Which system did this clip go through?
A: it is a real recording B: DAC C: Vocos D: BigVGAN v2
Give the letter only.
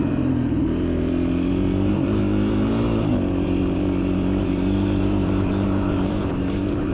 D